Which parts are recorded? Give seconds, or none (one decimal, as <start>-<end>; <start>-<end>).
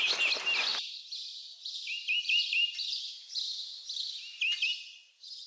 0.0-0.7; 3.4-5.5